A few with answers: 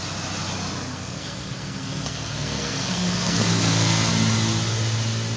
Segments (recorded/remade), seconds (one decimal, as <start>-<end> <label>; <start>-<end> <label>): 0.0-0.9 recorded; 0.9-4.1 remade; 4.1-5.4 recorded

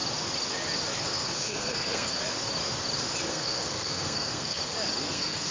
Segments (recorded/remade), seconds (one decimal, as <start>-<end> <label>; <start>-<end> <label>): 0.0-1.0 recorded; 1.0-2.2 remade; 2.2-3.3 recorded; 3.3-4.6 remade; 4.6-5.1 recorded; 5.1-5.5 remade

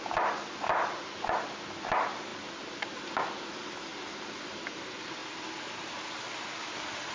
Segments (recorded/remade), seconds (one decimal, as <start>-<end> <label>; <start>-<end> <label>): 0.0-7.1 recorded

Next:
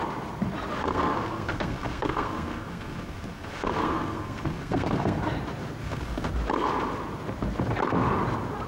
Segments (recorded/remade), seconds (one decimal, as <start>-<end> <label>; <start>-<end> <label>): 0.0-0.8 recorded; 0.8-5.2 remade; 5.2-5.8 recorded; 5.8-6.3 remade; 6.3-8.7 recorded

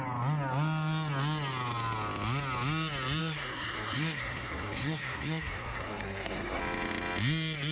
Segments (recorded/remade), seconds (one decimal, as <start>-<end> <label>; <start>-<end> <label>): 0.0-3.2 recorded; 3.2-6.6 remade; 6.6-7.7 recorded